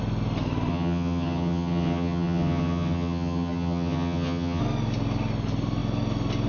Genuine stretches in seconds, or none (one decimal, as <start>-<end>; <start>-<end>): 0.0-0.7; 4.6-6.5